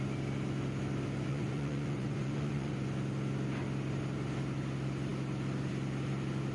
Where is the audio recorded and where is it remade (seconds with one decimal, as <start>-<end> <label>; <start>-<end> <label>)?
0.0-1.3 recorded; 1.3-2.7 remade; 2.7-6.5 recorded